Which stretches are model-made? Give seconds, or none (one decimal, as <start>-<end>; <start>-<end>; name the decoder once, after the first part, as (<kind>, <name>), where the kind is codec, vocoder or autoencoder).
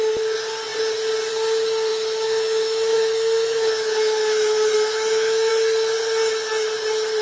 1.9-5.5 (autoencoder, DAC-VAE)